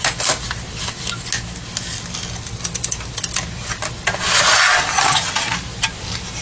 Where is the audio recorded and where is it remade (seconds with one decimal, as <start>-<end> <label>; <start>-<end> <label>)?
0.0-4.9 recorded; 4.9-5.5 remade; 5.5-6.4 recorded